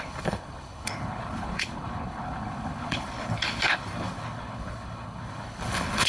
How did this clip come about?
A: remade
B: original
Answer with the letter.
A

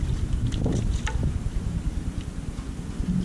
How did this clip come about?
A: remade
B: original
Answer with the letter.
B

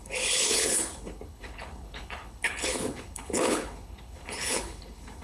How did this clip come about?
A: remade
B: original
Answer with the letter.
A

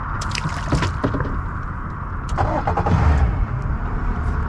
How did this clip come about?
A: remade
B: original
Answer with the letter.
B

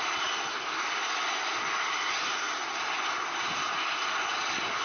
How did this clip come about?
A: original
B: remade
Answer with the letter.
A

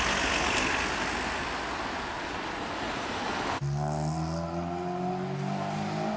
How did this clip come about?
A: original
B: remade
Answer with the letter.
A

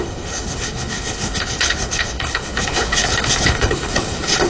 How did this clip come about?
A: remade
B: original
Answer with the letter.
A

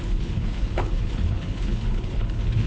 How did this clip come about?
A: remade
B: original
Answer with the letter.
A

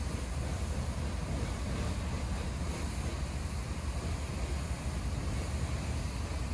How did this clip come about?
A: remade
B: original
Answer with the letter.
B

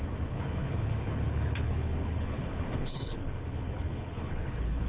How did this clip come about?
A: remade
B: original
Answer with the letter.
A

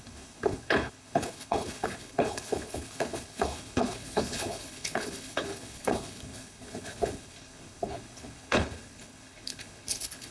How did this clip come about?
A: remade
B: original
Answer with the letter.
A